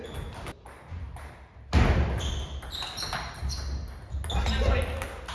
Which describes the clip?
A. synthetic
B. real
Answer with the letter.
B